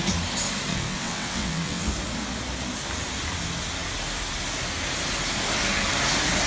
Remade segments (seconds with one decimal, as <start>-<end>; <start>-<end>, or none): 0.7-1.9